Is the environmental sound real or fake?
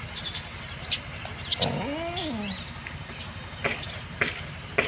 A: real